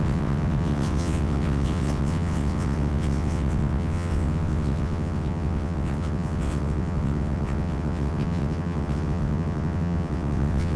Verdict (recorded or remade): remade